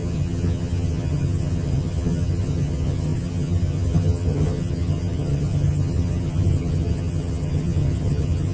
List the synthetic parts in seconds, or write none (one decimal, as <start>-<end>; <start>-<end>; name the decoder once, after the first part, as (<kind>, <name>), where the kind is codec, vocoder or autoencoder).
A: 0.0-8.5 (vocoder, HiFi-GAN)